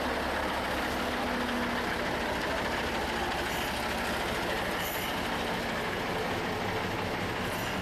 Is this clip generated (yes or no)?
no